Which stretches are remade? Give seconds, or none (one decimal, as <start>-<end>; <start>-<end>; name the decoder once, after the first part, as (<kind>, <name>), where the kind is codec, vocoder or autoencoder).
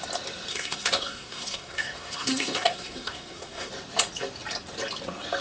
0.5-3.7 (codec, SNAC)